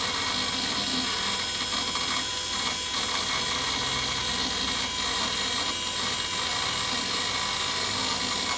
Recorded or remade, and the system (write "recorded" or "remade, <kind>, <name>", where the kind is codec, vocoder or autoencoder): recorded